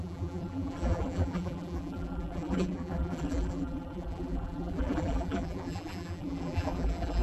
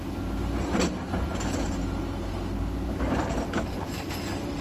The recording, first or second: second